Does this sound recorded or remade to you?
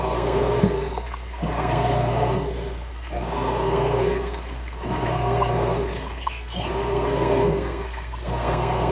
remade